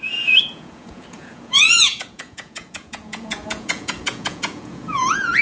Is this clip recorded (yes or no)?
no